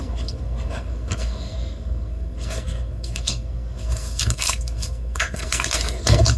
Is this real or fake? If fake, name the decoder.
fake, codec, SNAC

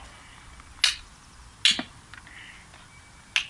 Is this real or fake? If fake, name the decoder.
real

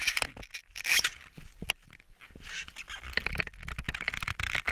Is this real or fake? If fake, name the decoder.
real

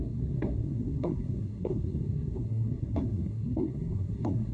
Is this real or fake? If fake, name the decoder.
fake, codec, SNAC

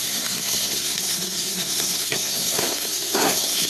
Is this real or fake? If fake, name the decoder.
fake, codec, SNAC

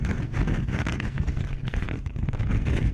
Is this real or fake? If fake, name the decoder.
fake, codec, SNAC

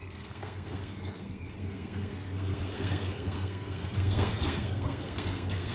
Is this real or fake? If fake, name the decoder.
fake, codec, SNAC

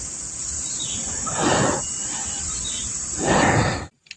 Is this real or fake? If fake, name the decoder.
real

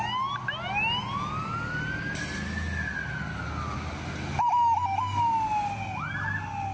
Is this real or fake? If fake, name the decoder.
real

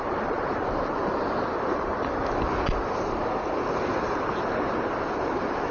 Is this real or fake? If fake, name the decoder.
real